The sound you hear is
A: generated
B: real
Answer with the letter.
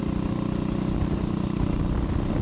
B